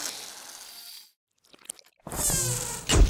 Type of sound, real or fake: real